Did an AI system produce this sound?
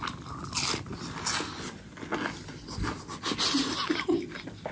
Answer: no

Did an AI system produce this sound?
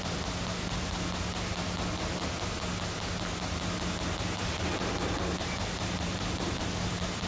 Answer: no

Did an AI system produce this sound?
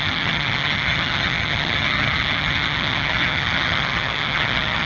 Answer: yes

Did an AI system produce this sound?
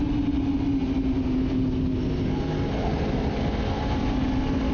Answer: no